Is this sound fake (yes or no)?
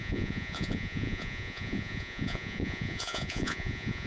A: yes